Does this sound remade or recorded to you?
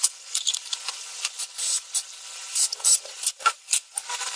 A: remade